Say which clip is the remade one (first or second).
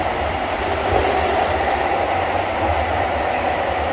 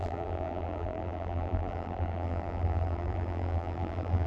second